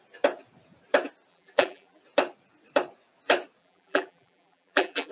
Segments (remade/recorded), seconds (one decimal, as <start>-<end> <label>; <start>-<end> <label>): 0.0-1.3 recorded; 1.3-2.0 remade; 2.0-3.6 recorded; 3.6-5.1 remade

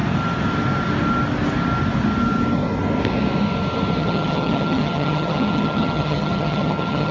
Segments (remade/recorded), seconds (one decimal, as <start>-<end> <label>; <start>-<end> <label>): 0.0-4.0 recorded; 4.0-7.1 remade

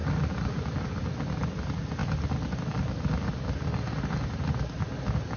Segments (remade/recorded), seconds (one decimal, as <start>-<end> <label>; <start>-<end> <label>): 0.0-5.4 recorded

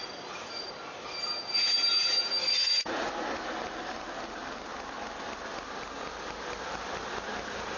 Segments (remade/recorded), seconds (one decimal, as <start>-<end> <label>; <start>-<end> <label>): 0.0-2.4 recorded; 2.4-3.1 remade; 3.1-7.8 recorded

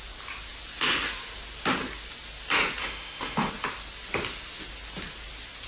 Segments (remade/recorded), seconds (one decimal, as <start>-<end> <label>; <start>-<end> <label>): 0.0-2.8 recorded; 2.8-3.5 remade; 3.5-5.7 recorded

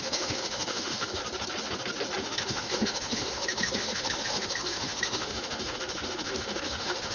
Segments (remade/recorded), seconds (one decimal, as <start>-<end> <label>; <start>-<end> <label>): 0.0-1.2 remade; 1.2-2.2 recorded; 2.2-7.1 remade

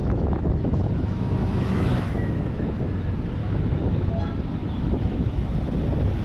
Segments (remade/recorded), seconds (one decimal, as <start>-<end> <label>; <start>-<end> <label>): 0.0-2.8 remade; 2.8-3.4 recorded; 3.4-4.1 remade; 4.1-4.6 recorded; 4.6-5.5 remade; 5.5-6.2 recorded

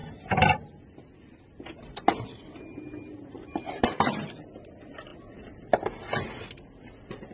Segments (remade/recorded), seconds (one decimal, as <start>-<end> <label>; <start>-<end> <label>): 0.0-7.3 recorded